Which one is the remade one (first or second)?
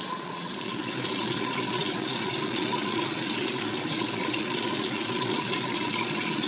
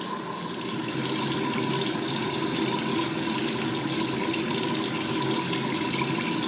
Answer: first